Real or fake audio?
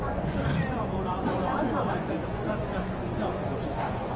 fake